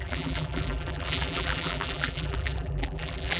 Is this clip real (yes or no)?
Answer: no